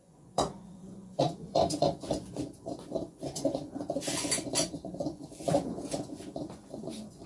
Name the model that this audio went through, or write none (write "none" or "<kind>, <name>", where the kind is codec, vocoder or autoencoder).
vocoder, Vocos